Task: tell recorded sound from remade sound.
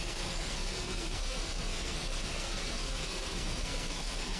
remade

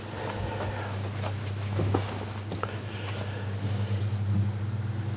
recorded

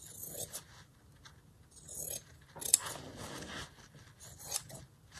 recorded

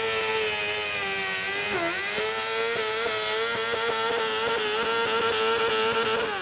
recorded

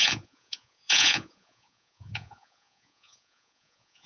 remade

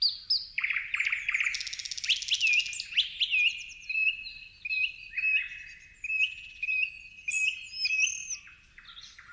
recorded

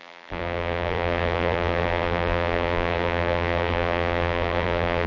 remade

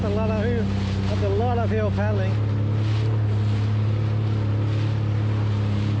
recorded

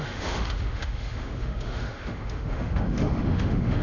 remade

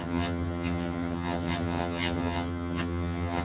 remade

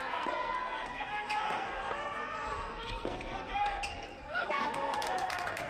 remade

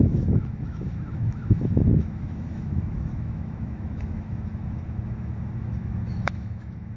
remade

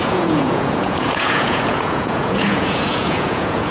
remade